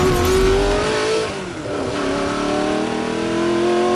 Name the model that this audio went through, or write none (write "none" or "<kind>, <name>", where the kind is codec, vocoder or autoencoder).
none